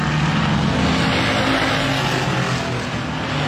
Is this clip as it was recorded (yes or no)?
yes